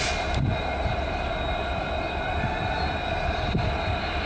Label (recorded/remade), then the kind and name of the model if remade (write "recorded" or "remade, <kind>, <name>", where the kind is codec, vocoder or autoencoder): recorded